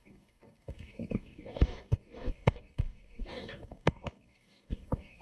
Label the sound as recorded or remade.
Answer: remade